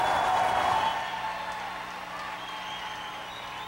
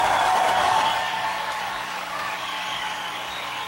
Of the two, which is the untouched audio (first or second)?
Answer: first